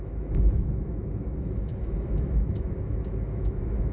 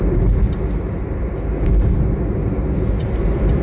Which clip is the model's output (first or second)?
first